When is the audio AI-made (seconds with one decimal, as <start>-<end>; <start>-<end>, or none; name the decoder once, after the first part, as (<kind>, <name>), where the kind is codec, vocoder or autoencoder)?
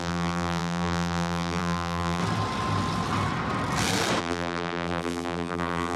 0.0-2.2 (vocoder, BigVGAN v2); 4.2-6.0